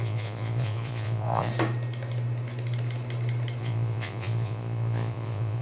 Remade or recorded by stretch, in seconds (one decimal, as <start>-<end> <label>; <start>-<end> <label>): 0.0-1.5 remade; 1.5-3.6 recorded; 3.6-5.6 remade